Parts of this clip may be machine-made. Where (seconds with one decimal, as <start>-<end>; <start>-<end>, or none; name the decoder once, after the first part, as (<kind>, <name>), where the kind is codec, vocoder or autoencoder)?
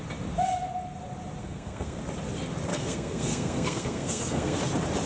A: 1.4-2.0 (codec, SNAC); 2.7-4.6